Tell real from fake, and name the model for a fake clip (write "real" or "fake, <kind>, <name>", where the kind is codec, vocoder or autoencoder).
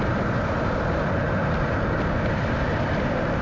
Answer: fake, vocoder, BigVGAN v2